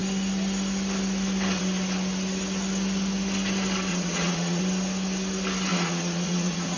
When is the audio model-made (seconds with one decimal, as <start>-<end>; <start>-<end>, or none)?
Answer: 3.9-4.6; 5.7-6.8